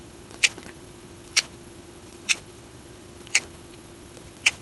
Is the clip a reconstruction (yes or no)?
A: yes